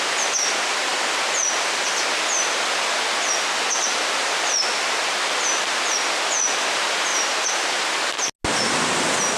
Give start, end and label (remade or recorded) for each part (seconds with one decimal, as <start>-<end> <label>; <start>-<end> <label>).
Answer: 0.0-9.4 recorded